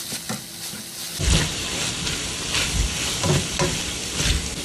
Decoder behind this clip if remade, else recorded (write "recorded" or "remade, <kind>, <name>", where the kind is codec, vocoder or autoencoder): recorded